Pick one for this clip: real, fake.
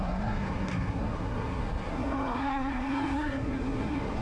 fake